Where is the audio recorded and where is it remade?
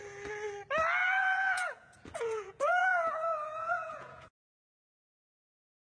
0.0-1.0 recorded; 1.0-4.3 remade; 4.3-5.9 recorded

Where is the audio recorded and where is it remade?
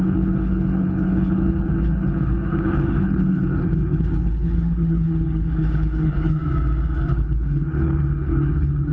0.0-6.4 remade; 6.4-7.1 recorded; 7.1-8.9 remade